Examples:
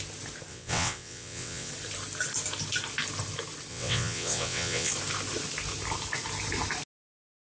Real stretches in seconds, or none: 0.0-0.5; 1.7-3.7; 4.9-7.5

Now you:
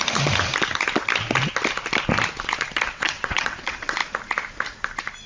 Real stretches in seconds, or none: 0.0-2.9; 4.0-5.3

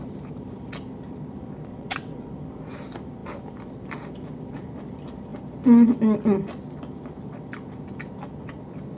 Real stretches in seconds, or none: 0.0-1.7; 2.3-9.0

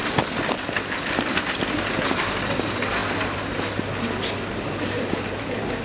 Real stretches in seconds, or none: 0.0-5.8

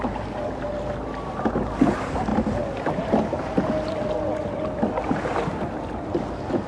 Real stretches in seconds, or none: 0.0-6.7

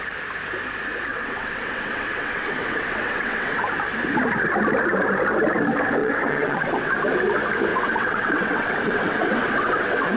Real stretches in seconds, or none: 0.0-1.1; 3.6-6.0; 6.9-7.7

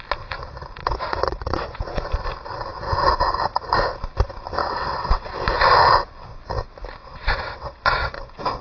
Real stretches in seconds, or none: 0.0-0.8; 2.0-4.6; 5.3-7.0; 8.1-8.6

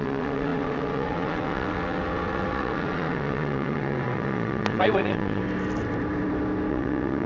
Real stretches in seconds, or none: 5.4-6.7